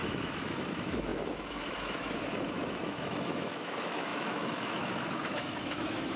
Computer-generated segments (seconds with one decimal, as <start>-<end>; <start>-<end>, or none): 0.0-6.2